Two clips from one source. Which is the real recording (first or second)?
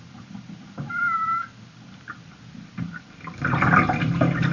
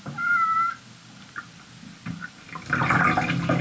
second